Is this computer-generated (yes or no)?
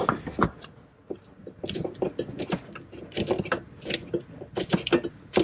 no